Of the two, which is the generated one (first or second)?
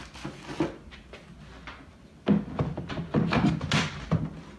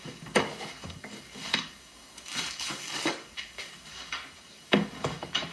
second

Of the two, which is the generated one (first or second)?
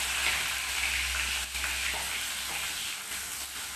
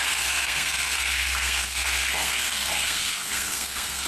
second